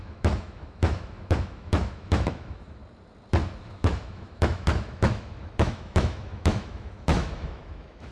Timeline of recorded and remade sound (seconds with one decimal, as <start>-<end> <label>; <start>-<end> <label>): 0.0-2.8 remade; 2.8-3.6 recorded; 3.6-8.1 remade